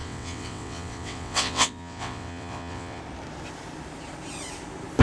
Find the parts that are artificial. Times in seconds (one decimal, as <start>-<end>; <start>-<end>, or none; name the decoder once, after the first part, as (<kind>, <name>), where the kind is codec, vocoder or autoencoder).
0.0-3.0 (vocoder, WaveNeXt)